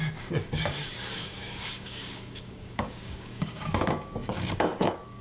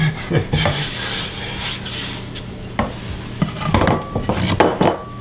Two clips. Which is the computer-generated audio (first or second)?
first